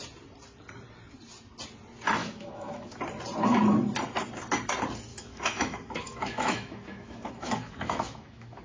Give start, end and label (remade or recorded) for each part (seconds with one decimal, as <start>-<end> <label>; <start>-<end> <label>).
0.0-2.2 recorded; 2.2-3.0 remade; 3.0-5.1 recorded; 5.1-8.6 remade

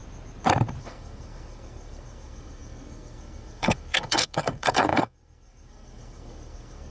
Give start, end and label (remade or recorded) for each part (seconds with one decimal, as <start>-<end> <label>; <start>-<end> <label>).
0.0-0.8 recorded; 0.8-6.9 remade

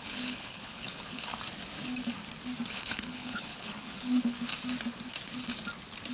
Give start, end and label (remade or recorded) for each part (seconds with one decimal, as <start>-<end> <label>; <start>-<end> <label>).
0.0-1.3 remade; 1.3-2.7 recorded; 2.7-4.5 remade; 4.5-6.1 recorded

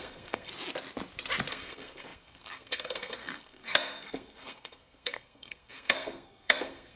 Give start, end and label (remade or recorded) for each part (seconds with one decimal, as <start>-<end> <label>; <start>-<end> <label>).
0.0-0.5 remade; 0.5-1.5 recorded; 1.5-7.0 remade